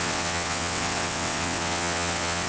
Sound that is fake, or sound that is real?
fake